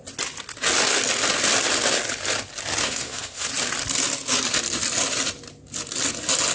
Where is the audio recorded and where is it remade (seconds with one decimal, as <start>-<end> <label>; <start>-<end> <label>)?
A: 0.0-2.8 recorded; 2.8-3.5 remade; 3.5-6.5 recorded